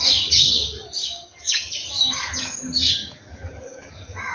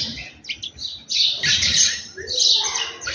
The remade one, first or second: first